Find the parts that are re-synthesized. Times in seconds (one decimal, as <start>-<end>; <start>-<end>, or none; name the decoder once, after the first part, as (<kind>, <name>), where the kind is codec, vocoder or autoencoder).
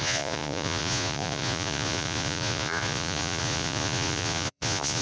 0.0-5.0 (vocoder, Vocos)